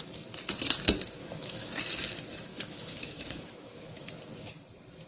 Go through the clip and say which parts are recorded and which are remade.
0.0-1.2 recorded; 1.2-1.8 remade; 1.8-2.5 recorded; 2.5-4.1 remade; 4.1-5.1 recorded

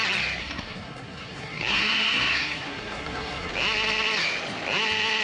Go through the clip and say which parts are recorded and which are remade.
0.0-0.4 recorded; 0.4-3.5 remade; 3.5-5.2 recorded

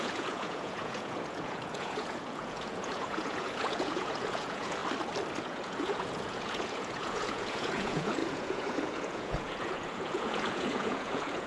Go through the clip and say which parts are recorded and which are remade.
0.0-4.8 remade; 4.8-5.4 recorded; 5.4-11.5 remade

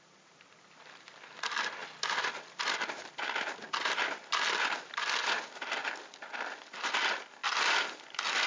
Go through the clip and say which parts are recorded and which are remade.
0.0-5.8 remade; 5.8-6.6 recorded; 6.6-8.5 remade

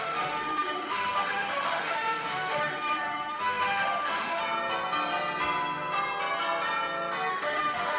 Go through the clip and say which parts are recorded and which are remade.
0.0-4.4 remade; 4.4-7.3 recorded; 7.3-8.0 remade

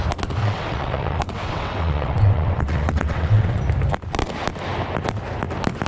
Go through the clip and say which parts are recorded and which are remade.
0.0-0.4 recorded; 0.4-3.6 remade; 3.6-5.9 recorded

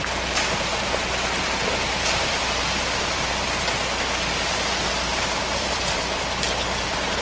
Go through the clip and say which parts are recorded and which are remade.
0.0-0.7 recorded; 0.7-2.4 remade; 2.4-5.1 recorded; 5.1-6.0 remade; 6.0-7.2 recorded

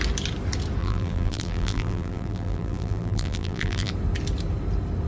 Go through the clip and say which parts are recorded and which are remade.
0.0-0.8 recorded; 0.8-3.9 remade; 3.9-5.1 recorded